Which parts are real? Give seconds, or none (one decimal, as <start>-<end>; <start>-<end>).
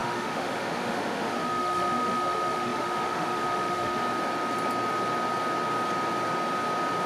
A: 4.0-7.1